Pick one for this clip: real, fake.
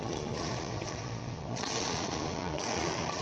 fake